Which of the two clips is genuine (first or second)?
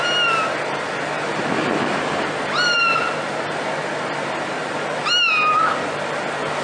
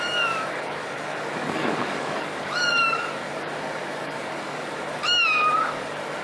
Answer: first